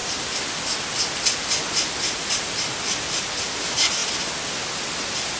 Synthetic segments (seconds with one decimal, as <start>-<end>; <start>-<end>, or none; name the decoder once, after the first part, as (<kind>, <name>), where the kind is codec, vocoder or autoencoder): none